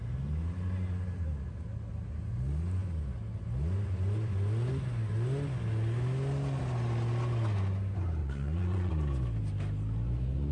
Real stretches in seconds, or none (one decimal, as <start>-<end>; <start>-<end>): 0.0-8.2; 8.9-10.5